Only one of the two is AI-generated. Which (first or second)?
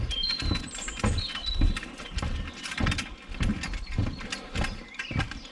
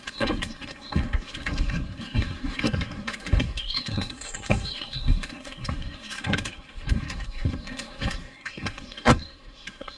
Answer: second